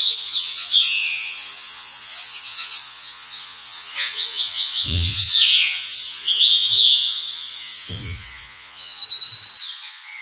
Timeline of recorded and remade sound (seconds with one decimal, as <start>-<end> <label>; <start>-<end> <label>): 0.0-9.0 remade; 9.0-9.6 recorded; 9.6-10.2 remade